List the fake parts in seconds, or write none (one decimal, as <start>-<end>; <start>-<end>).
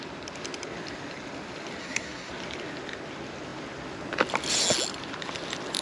1.8-2.3